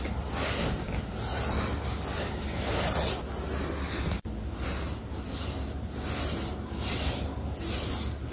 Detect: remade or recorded recorded